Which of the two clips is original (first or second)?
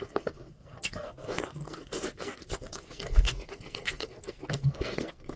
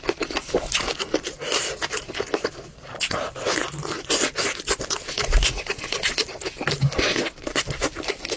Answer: second